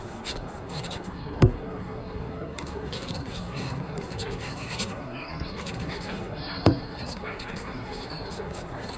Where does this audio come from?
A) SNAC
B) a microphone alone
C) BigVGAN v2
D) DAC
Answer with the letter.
A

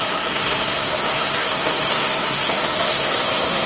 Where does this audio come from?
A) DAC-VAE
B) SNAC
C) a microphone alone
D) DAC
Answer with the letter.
B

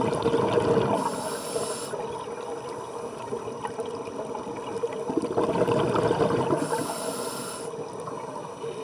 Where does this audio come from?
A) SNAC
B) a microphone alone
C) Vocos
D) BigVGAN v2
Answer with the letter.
B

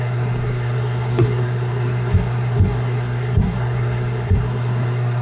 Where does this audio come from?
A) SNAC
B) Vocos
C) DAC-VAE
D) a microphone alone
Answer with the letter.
A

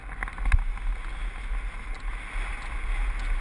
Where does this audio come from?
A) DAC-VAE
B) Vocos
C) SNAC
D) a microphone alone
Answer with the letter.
D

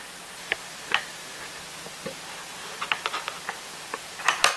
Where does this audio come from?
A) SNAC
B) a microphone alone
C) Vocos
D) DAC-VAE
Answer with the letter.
B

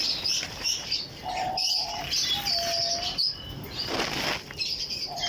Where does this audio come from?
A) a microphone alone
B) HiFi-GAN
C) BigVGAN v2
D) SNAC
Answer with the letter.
A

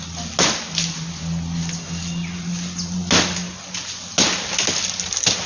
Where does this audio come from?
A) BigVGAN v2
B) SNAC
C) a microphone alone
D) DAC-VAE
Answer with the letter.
C